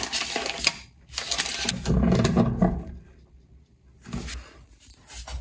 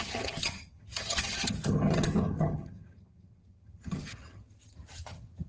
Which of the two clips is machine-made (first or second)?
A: second